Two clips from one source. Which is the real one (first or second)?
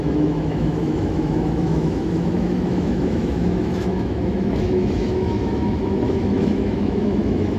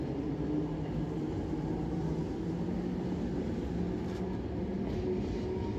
second